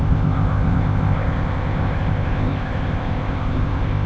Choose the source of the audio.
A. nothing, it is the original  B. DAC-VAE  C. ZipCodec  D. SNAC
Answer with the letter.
C